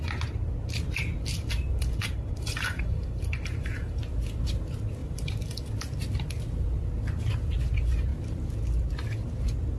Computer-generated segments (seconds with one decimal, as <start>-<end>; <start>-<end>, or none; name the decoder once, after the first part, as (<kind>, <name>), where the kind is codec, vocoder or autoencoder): 1.3-4.0 (vocoder, BigVGAN v2); 5.0-5.7